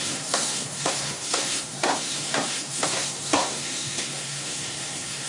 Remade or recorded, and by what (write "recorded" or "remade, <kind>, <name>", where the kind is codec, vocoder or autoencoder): remade, codec, SNAC